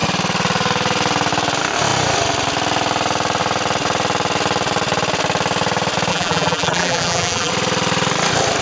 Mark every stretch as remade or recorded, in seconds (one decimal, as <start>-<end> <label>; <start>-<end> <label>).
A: 0.0-6.1 recorded; 6.1-7.5 remade; 7.5-8.6 recorded